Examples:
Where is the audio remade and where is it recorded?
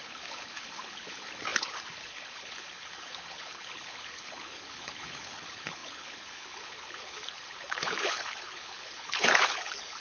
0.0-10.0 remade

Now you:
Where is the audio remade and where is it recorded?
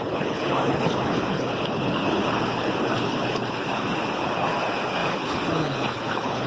0.0-6.5 remade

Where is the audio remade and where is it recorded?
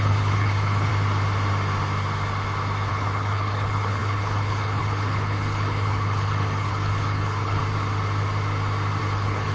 0.0-0.9 remade; 0.9-2.9 recorded; 2.9-7.6 remade; 7.6-9.0 recorded; 9.0-9.5 remade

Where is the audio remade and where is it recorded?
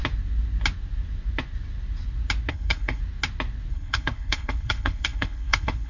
0.0-2.5 recorded; 2.5-3.0 remade; 3.0-3.7 recorded; 3.7-5.9 remade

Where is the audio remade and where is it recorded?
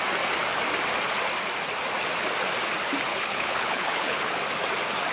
0.0-3.1 recorded; 3.1-4.4 remade; 4.4-5.1 recorded